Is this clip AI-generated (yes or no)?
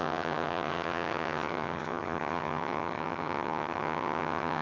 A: yes